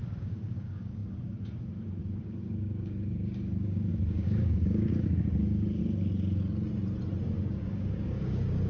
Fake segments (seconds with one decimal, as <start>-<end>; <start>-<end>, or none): 0.0-5.8; 7.2-8.7